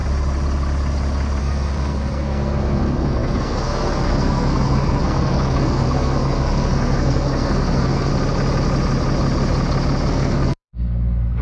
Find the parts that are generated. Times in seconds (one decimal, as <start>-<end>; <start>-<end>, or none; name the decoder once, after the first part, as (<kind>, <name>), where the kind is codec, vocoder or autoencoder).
1.4-8.1 (codec, SNAC); 10.1-11.4